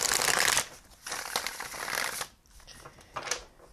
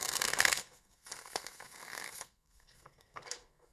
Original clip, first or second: first